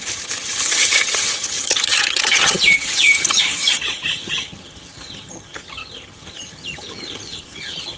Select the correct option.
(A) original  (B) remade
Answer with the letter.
B